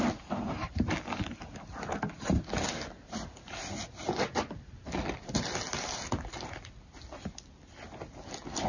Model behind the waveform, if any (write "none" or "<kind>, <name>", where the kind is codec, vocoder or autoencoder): none